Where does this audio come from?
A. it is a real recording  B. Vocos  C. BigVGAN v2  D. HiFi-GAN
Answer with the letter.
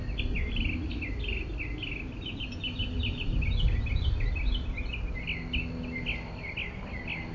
A